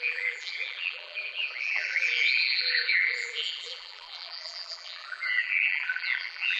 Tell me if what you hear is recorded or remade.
remade